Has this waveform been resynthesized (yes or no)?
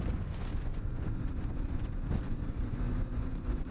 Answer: yes